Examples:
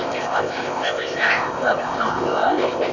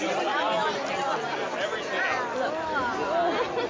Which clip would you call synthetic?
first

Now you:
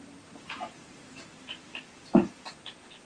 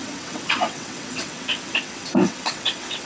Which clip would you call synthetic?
second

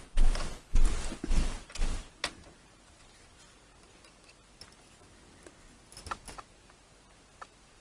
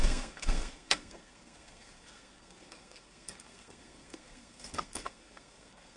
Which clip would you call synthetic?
second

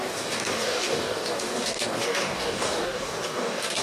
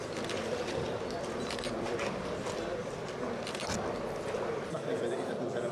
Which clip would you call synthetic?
first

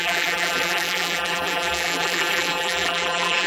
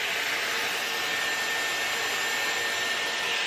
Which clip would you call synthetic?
first